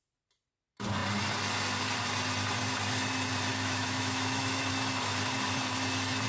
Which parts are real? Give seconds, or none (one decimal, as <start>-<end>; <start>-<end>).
0.0-3.5; 4.7-6.3